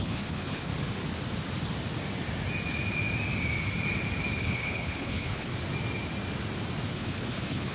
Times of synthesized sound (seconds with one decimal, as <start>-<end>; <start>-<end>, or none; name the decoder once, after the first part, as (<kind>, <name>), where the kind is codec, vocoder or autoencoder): 0.0-0.7 (codec, HILCodec); 4.4-5.5; 6.9-7.7